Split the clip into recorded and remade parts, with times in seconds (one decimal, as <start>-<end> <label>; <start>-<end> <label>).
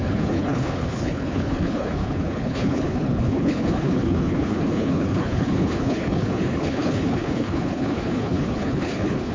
0.0-9.3 remade